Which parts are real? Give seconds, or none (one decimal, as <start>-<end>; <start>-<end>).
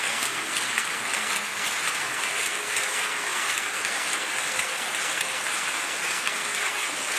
none